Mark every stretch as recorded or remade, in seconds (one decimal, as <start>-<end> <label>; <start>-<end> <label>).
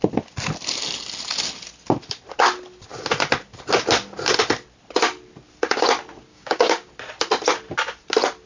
0.0-6.3 recorded; 6.3-6.9 remade; 6.9-8.5 recorded